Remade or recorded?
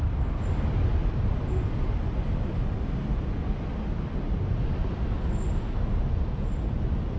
recorded